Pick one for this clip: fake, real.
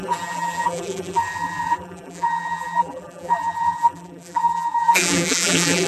fake